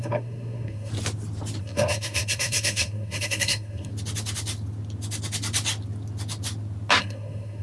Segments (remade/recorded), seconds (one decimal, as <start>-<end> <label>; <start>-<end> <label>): 0.0-0.9 remade; 0.9-1.6 recorded; 1.6-3.9 remade; 3.9-7.0 recorded; 7.0-7.6 remade